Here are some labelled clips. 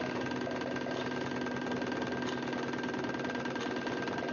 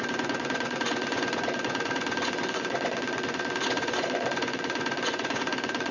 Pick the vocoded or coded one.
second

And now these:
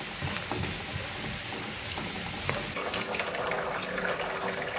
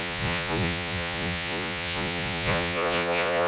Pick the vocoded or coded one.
second